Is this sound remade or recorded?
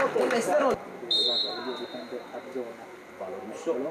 recorded